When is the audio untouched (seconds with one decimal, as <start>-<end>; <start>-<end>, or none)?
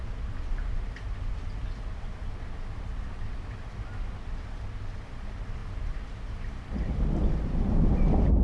0.0-8.4